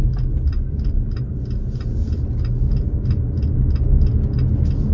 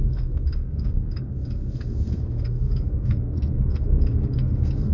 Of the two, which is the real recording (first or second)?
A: first